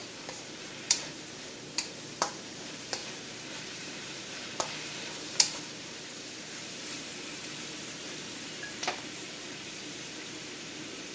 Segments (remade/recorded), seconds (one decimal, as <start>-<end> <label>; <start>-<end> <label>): 0.0-3.0 remade; 3.0-3.5 recorded; 3.5-11.1 remade